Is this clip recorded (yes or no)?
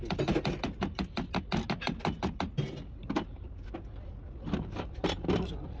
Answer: yes